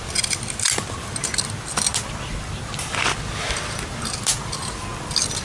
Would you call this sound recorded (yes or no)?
yes